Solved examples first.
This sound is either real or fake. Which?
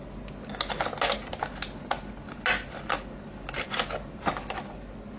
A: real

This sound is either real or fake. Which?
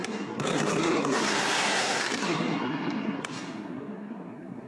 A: fake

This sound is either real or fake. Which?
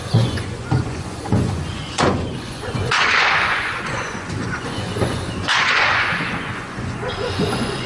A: fake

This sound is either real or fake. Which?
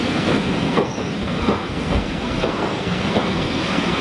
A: fake